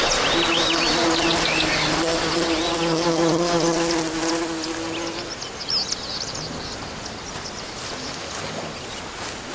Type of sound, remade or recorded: recorded